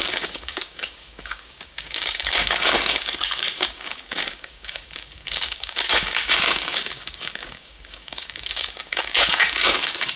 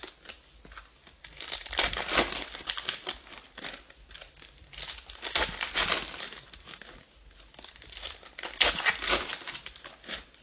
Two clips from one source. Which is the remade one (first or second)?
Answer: first